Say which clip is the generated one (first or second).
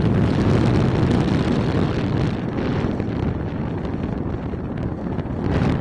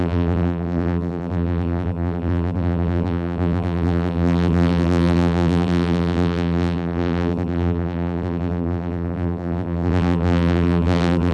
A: second